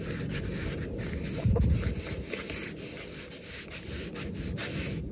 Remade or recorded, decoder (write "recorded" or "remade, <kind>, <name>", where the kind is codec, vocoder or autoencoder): recorded